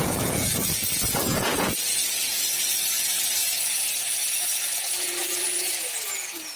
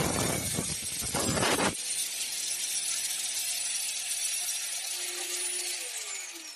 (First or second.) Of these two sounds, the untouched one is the second